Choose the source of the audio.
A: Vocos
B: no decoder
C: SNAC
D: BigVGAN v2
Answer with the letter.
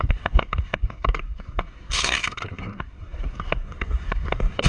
C